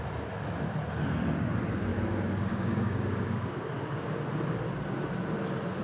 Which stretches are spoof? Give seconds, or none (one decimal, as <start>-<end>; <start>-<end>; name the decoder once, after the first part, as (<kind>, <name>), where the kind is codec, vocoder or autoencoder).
1.9-4.2 (codec, DAC)